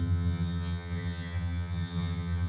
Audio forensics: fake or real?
fake